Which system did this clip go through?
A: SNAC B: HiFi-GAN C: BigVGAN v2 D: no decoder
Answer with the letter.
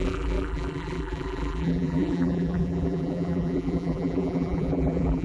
C